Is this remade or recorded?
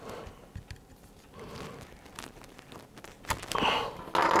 recorded